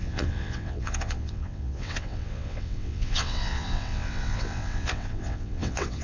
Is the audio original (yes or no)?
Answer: no